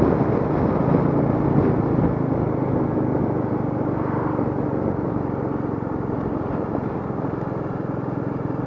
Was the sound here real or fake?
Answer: real